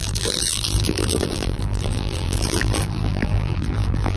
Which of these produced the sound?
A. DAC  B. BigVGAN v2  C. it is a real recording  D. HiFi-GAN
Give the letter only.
B